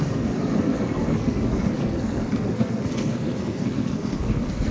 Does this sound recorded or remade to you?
remade